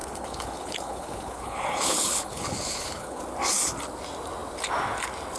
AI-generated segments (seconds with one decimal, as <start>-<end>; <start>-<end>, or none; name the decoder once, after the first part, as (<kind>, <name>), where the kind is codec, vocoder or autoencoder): 0.0-3.2 (codec, HILCodec)